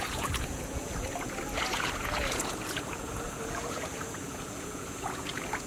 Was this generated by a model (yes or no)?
yes